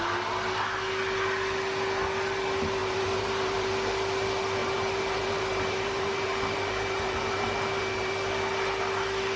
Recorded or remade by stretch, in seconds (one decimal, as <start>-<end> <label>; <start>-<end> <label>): 0.0-2.8 recorded; 2.8-3.7 remade; 3.7-4.6 recorded; 4.6-8.1 remade; 8.1-9.4 recorded